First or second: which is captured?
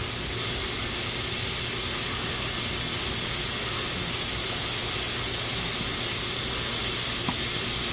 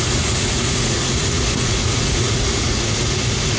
first